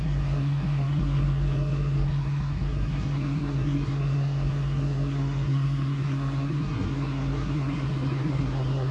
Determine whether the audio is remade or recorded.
remade